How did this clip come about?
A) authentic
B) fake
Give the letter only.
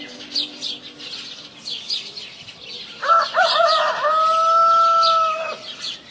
A